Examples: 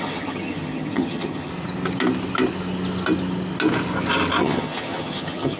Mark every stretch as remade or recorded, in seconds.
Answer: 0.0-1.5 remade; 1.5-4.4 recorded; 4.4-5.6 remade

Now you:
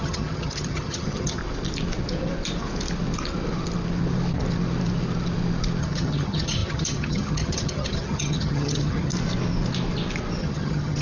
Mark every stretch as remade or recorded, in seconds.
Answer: 0.0-1.4 remade; 1.4-5.8 recorded; 5.8-9.1 remade; 9.1-10.4 recorded; 10.4-11.0 remade

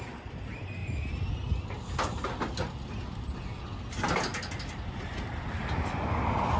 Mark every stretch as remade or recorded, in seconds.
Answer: 0.0-6.6 recorded

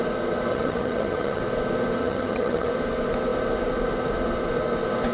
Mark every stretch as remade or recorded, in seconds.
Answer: 0.0-0.5 recorded; 0.5-1.4 remade; 1.4-2.0 recorded; 2.0-2.7 remade; 2.7-5.1 recorded